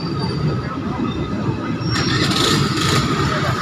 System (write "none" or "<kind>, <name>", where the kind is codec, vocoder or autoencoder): vocoder, BigVGAN v2